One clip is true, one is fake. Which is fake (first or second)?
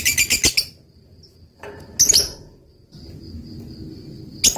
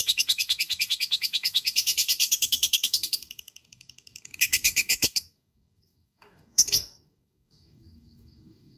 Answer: second